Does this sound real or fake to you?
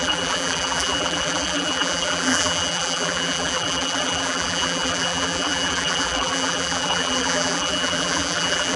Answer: fake